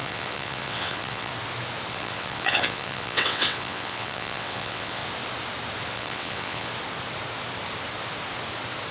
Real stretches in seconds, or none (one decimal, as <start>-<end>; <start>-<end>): 1.3-1.9; 5.0-5.9; 6.7-8.9